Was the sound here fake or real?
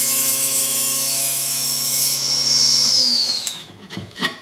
fake